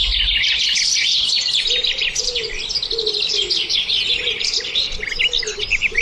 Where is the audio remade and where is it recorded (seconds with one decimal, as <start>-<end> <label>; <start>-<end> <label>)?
0.0-6.0 recorded